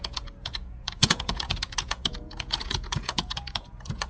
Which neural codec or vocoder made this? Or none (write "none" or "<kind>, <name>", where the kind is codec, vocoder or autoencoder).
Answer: vocoder, Vocos